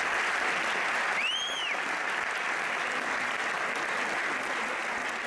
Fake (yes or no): no